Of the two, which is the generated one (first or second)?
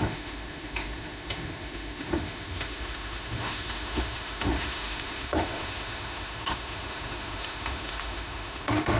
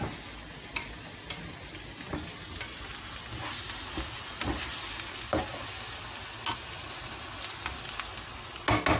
first